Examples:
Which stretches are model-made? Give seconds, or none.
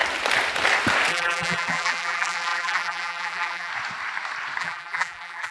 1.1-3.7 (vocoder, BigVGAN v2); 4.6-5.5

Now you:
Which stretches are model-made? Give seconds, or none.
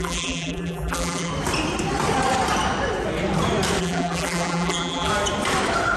0.0-1.3 (vocoder, BigVGAN v2); 3.8-5.1